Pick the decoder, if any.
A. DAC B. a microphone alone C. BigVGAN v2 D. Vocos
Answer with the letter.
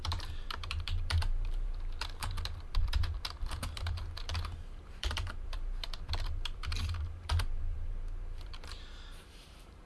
C